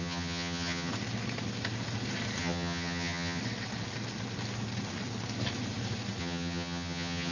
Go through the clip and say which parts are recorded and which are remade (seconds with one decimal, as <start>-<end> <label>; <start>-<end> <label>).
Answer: 0.0-0.9 remade; 0.9-2.4 recorded; 2.4-3.4 remade; 3.4-6.2 recorded; 6.2-7.3 remade